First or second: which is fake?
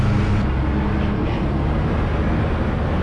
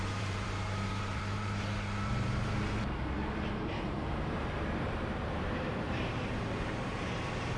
second